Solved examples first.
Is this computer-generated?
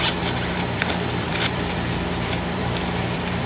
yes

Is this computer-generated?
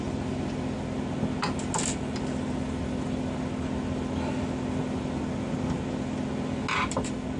no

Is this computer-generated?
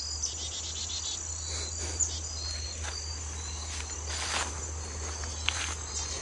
no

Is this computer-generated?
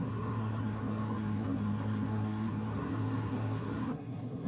yes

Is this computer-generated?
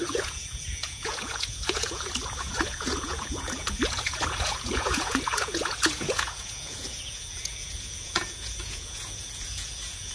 yes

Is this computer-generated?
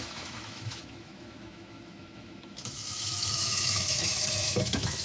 yes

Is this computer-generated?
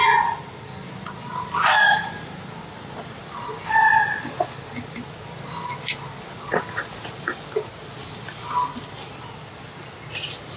no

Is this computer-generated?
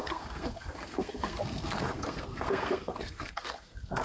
yes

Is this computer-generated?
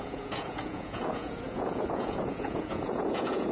yes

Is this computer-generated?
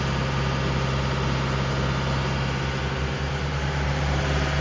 no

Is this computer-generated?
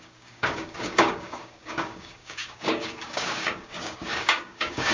yes